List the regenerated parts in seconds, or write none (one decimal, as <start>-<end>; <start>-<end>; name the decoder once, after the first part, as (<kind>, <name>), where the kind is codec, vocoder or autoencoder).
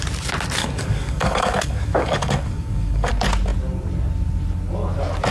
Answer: 0.6-3.1 (codec, DAC)